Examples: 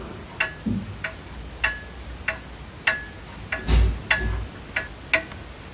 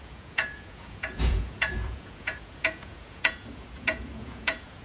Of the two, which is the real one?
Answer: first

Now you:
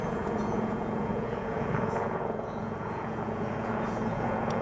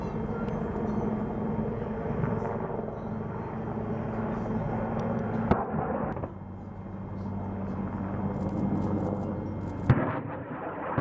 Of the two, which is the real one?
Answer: second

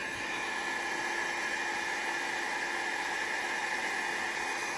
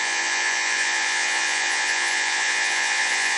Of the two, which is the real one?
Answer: first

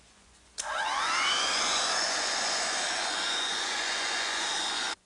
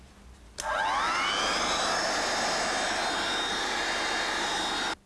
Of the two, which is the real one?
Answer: second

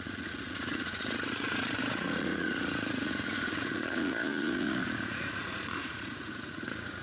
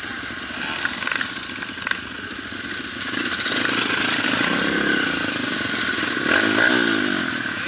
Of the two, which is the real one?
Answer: second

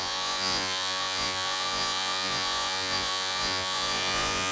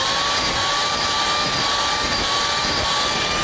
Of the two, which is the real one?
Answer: second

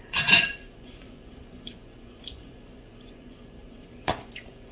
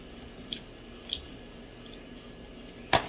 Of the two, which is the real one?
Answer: second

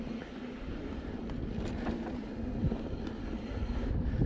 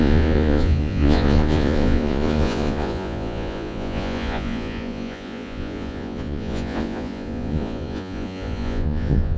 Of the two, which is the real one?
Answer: first